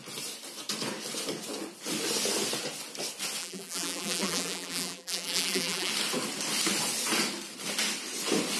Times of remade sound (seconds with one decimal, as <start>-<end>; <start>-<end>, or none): 3.4-5.9